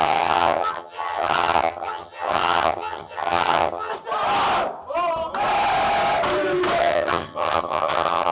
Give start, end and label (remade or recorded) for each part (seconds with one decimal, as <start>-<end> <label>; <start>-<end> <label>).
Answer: 0.0-3.9 remade; 3.9-6.8 recorded; 6.8-8.3 remade